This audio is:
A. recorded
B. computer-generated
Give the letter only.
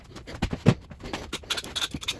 A